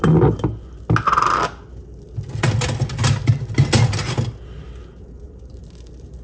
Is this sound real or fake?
real